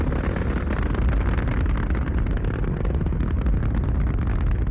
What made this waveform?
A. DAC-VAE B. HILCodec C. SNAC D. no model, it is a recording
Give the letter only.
D